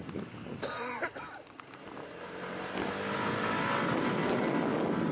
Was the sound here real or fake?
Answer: real